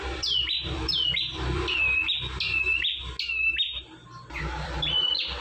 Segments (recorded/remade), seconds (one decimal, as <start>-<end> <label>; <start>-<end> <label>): 0.0-2.0 remade; 2.0-4.4 recorded; 4.4-5.4 remade